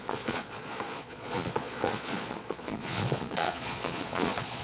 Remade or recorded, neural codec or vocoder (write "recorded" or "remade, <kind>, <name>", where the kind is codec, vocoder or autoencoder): remade, vocoder, Vocos